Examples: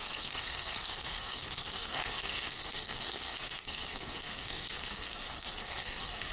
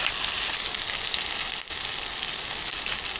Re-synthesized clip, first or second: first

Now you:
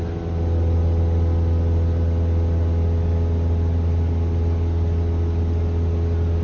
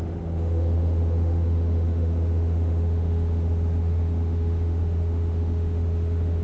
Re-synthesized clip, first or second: second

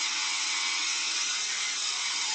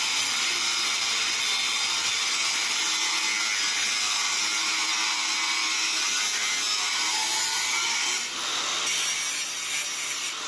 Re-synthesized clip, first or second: first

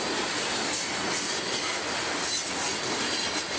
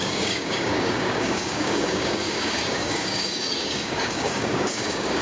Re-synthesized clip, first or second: second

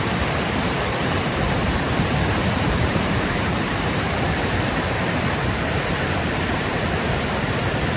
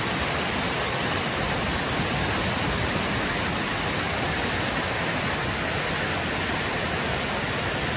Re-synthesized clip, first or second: first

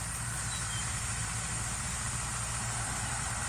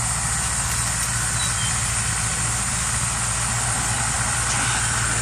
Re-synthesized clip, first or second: first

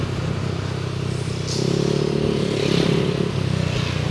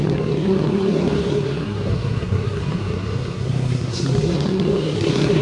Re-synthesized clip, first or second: second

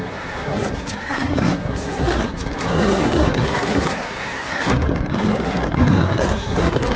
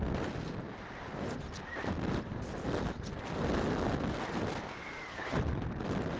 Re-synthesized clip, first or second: first